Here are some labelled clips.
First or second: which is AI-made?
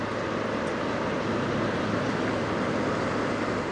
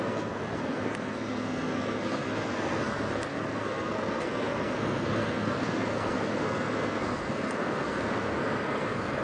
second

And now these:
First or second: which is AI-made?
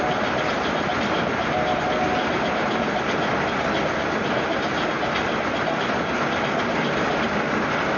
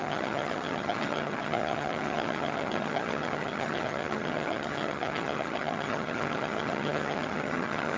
second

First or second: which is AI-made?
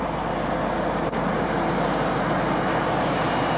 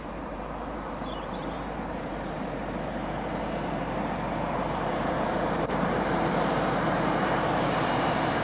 second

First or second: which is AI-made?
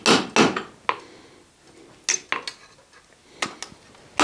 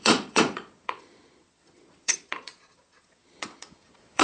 second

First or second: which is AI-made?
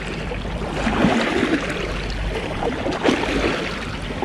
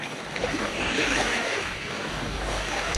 second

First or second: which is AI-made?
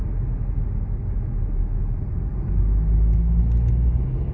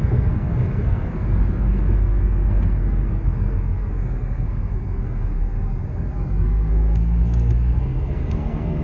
second